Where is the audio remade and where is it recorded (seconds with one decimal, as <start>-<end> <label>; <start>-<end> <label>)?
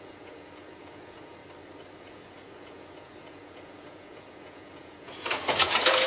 0.0-1.4 remade; 1.4-1.9 recorded; 1.9-6.1 remade